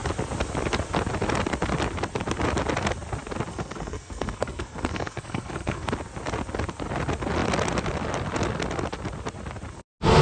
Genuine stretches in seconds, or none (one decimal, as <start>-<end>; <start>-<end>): 0.0-3.5; 5.9-10.2